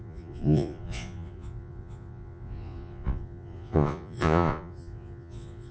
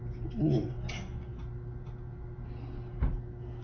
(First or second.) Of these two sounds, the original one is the second